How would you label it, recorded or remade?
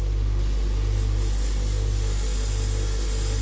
recorded